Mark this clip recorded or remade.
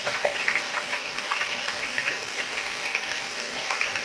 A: remade